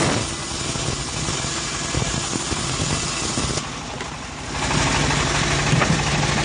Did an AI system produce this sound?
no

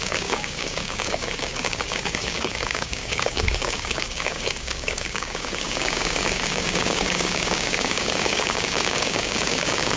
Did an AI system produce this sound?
yes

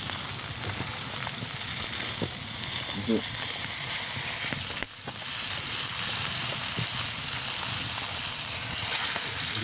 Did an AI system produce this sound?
no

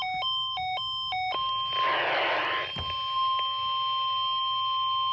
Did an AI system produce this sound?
no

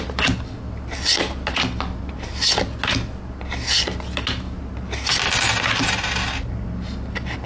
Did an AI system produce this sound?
no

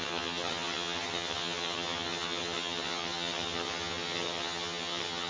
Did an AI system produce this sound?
yes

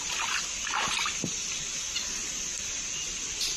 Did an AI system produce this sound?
no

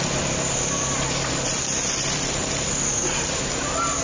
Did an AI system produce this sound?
yes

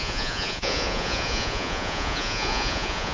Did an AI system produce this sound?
yes